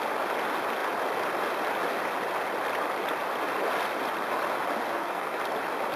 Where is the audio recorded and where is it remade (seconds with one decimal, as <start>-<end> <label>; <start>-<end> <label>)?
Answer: 0.0-4.9 recorded; 4.9-5.4 remade; 5.4-6.0 recorded